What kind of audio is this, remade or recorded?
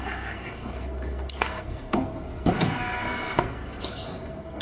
remade